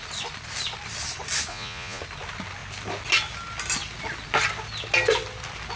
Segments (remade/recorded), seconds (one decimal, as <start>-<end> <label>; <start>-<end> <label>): 0.0-1.5 recorded; 1.5-2.0 remade; 2.0-5.8 recorded